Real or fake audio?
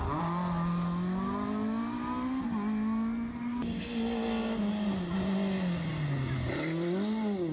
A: real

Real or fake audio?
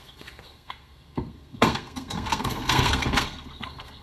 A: fake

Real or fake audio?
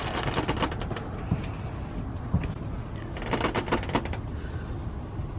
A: real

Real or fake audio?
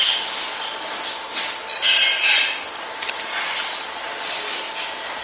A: real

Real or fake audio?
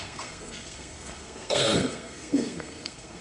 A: fake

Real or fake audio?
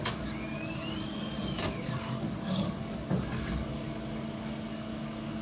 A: fake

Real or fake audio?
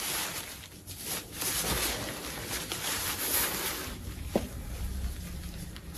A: real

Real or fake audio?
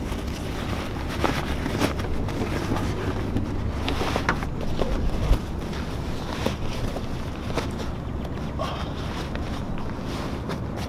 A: real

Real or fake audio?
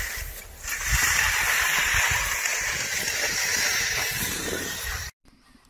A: fake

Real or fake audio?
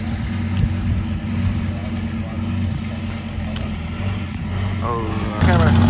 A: real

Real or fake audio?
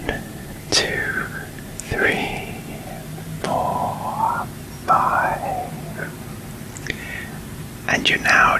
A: real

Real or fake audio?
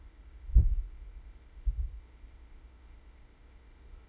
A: fake